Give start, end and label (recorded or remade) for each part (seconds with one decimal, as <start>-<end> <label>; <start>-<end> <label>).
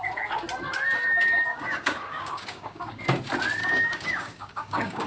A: 0.0-1.5 recorded; 1.5-3.0 remade; 3.0-3.6 recorded; 3.6-5.1 remade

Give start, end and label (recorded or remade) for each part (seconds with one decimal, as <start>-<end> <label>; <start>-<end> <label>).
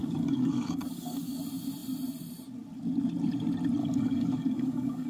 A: 0.0-1.4 remade; 1.4-3.8 recorded; 3.8-5.1 remade